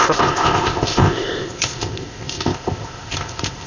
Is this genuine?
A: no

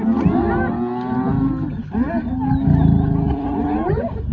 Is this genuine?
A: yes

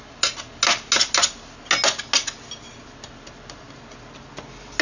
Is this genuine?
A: yes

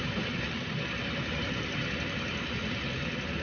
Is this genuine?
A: yes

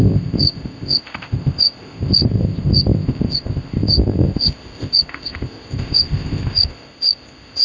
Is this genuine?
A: no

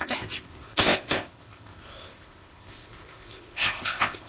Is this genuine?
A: no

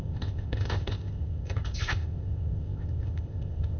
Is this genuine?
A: no